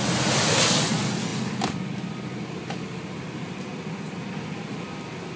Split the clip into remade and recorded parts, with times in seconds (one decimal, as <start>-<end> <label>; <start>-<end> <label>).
0.0-5.4 recorded